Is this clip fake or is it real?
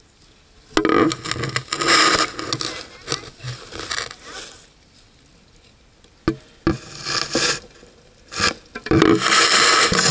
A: real